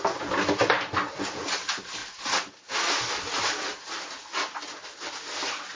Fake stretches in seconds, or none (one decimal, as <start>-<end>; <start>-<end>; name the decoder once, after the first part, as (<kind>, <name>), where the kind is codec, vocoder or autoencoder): none